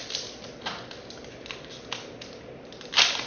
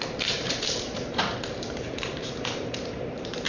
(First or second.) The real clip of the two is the first